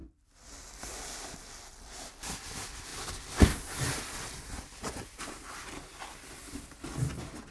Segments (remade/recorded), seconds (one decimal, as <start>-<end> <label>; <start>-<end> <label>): 0.0-7.5 recorded